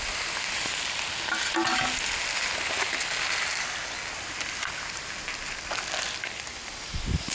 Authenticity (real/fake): real